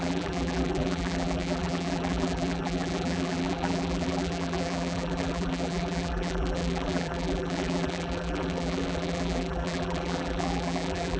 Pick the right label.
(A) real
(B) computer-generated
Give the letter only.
B